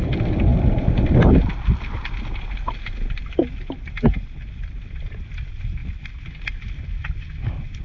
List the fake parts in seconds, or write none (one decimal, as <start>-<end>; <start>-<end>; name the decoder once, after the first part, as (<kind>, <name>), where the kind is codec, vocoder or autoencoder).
none